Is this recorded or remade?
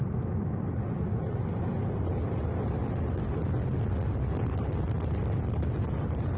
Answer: recorded